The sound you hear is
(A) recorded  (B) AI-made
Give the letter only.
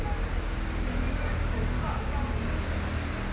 A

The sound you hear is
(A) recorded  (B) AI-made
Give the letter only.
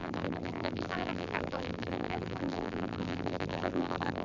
B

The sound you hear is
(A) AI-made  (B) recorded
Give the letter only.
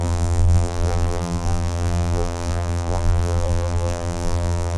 A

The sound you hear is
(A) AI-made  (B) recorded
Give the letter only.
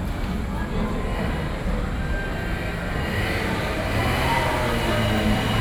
B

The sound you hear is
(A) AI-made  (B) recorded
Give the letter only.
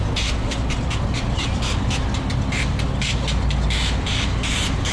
B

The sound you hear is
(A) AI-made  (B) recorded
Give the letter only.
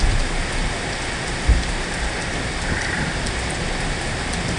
B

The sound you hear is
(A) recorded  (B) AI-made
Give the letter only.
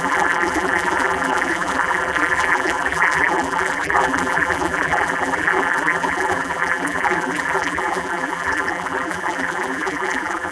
B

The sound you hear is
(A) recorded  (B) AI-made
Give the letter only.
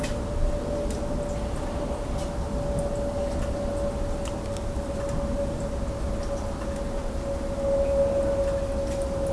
A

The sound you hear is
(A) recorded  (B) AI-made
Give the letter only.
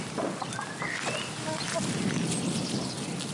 A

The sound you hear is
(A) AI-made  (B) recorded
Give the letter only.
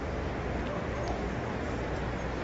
B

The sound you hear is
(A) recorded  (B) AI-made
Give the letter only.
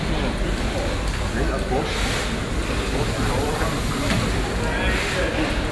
A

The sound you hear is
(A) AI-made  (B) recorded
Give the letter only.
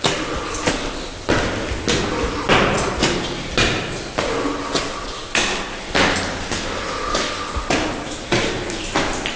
B